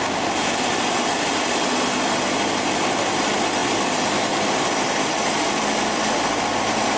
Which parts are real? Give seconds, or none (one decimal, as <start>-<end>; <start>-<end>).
0.0-7.0